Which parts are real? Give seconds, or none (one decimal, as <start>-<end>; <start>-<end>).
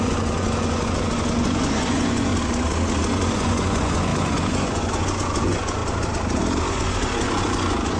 2.3-3.0; 5.8-6.7